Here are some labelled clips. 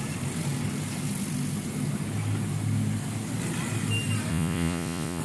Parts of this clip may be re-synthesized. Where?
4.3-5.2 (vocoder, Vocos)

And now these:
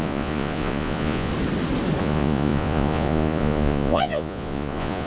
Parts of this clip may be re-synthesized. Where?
0.0-1.3 (vocoder, Vocos); 2.0-5.1